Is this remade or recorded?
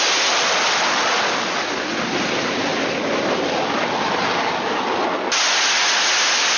recorded